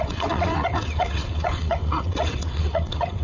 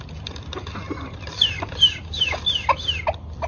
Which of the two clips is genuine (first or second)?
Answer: second